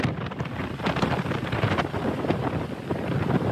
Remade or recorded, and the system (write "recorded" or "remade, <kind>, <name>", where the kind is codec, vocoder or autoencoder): recorded